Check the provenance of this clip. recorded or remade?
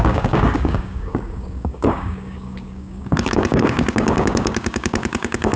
remade